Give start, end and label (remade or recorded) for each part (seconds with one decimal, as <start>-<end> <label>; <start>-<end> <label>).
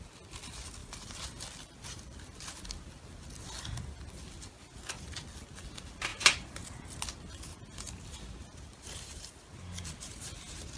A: 0.0-0.8 recorded; 0.8-2.2 remade; 2.2-8.4 recorded; 8.4-9.4 remade; 9.4-10.8 recorded